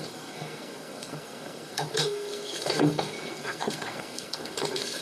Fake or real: fake